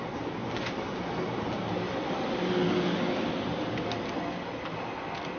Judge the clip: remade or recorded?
recorded